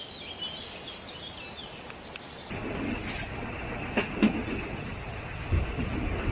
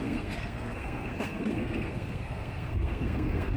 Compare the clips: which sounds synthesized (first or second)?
second